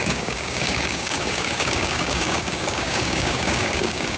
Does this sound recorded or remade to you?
remade